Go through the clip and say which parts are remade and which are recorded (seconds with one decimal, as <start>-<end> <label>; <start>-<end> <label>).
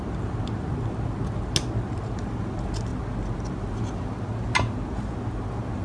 0.0-5.8 recorded